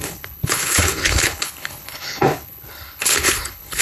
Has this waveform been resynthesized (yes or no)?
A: yes